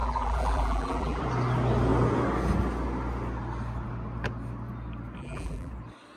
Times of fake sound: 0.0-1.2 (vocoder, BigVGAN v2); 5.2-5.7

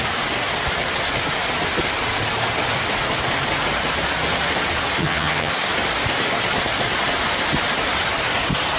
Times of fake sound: 5.0-5.5 (vocoder, HiFi-GAN)

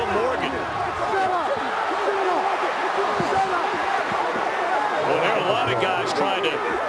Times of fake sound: none

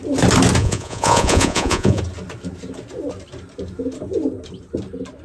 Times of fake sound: 0.6-2.0 (vocoder, Vocos)

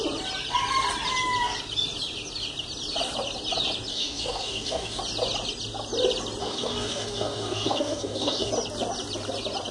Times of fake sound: 3.9-5.0 (codec, DAC); 6.4-8.5